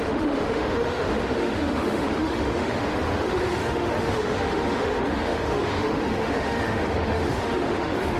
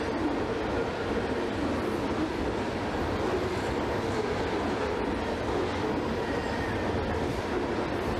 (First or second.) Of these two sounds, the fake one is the first